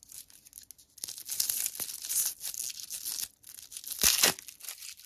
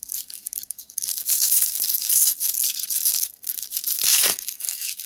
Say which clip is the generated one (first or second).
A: second